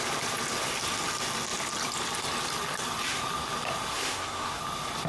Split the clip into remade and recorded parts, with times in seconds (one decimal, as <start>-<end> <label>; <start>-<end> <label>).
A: 0.0-3.9 recorded; 3.9-4.6 remade; 4.6-5.1 recorded